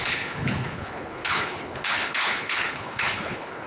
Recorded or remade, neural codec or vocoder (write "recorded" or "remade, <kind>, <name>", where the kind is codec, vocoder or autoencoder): remade, codec, HILCodec